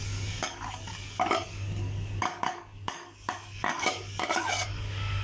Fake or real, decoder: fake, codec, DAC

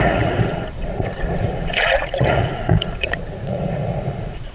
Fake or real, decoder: fake, vocoder, Vocos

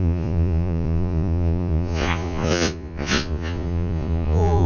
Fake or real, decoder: fake, vocoder, Vocos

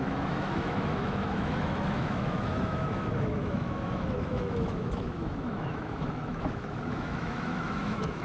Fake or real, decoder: fake, autoencoder, DAC-VAE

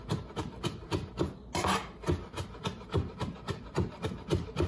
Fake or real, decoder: real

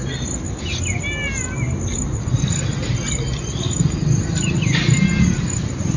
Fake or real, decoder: real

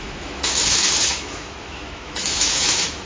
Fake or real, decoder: fake, autoencoder, DAC-VAE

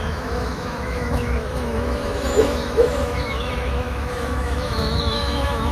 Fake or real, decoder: fake, autoencoder, DAC-VAE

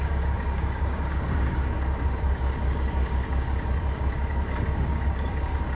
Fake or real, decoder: fake, codec, DAC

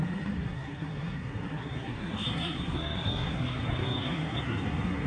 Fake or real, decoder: fake, codec, SNAC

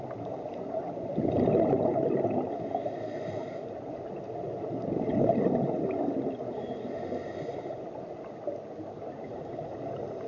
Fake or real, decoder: real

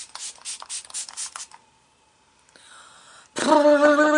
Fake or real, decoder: real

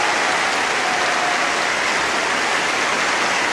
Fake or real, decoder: real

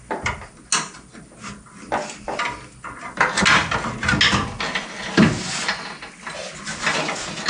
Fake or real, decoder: real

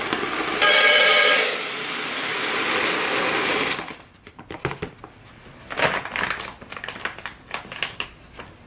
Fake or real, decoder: real